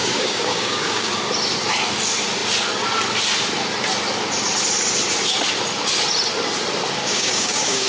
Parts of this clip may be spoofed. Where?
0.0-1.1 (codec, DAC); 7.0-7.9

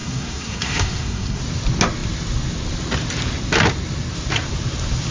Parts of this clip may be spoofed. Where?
0.0-1.4 (codec, SNAC)

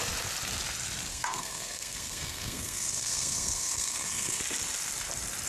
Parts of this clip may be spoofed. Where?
1.1-4.4 (codec, SNAC)

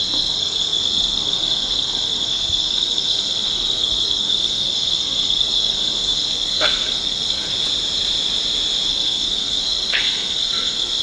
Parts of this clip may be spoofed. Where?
0.0-7.5 (codec, SNAC); 8.9-11.0

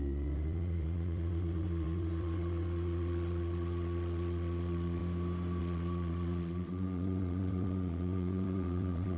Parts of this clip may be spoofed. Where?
0.0-5.0 (vocoder, WaveNeXt); 5.6-9.2